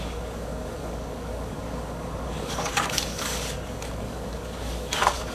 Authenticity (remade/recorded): remade